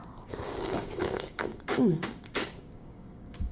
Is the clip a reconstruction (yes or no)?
yes